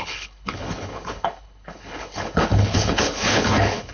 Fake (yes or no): yes